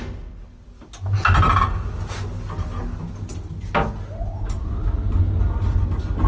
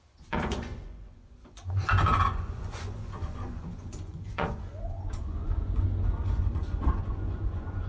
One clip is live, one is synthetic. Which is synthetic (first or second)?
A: second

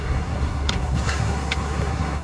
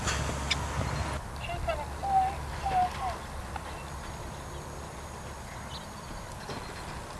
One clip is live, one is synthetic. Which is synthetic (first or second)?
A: first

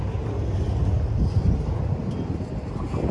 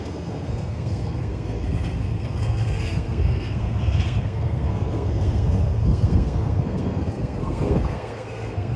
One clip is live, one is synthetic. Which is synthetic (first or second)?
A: second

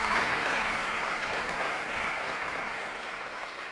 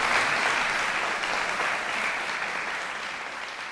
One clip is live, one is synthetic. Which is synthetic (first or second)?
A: first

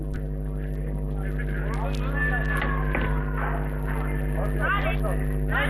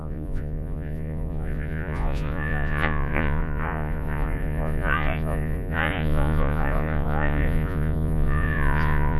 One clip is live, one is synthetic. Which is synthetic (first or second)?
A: second